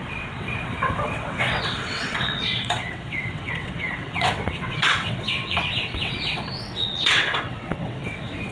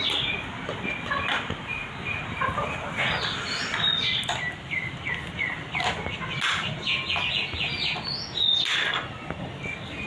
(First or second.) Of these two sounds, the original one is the second